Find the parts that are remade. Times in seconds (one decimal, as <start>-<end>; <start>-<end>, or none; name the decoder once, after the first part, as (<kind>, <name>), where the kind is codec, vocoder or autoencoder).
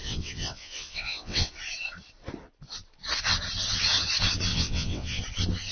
0.0-1.5 (vocoder, WaveNeXt); 4.5-5.2